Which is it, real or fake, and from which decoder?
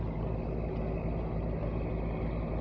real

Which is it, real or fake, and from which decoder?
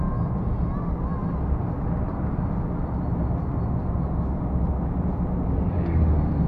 real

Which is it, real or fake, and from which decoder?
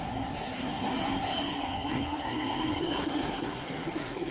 fake, codec, SNAC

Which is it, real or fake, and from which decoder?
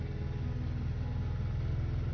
real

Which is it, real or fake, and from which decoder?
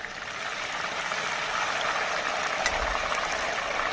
real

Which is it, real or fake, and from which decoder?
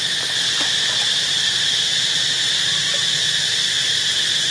real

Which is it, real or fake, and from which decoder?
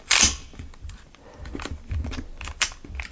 fake, vocoder, BigVGAN v2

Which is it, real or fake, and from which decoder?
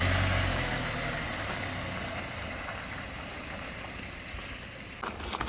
real